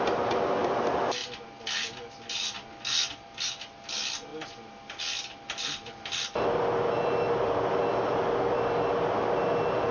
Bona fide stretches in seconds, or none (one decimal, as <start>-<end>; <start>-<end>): 0.0-9.9